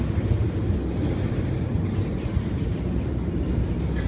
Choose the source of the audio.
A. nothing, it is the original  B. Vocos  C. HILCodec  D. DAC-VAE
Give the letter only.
A